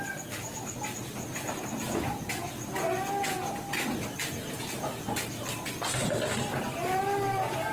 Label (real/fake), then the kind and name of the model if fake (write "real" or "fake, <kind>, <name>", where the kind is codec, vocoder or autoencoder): real